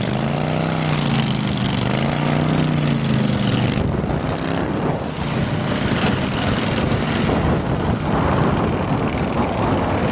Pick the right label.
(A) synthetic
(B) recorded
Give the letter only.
B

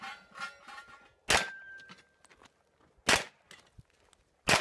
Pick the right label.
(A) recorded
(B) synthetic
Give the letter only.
A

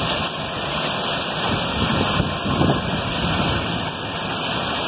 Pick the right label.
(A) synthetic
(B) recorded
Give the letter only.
B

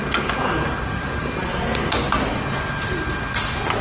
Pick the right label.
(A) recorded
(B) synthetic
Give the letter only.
A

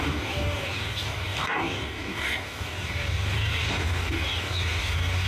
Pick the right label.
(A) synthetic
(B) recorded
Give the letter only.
A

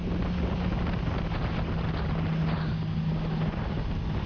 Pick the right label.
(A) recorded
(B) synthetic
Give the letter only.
A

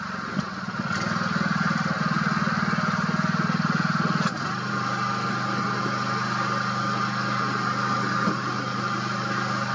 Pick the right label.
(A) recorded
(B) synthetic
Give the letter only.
A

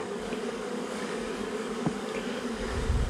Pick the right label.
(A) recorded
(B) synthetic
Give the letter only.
B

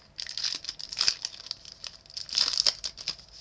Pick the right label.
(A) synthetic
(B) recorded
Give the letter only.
B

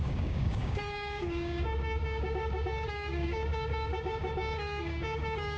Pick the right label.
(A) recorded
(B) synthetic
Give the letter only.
B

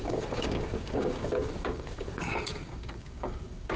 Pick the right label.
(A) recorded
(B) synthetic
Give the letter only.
B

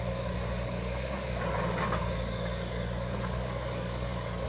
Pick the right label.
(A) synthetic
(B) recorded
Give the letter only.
A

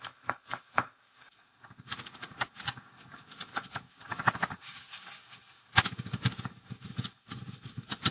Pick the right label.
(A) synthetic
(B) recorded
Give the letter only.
A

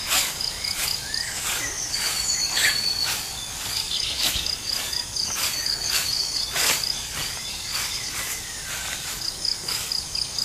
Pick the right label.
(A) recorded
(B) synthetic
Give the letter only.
B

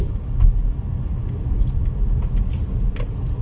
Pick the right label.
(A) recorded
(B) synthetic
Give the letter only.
A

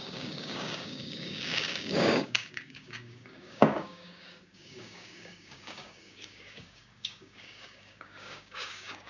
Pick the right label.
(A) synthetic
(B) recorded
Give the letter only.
A